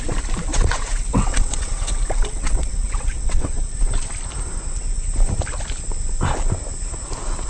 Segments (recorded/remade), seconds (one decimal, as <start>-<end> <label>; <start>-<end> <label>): 0.0-0.5 recorded; 0.5-3.5 remade; 3.5-7.5 recorded